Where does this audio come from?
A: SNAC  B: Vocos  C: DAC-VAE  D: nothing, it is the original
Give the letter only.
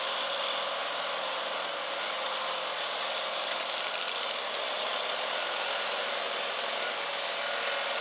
D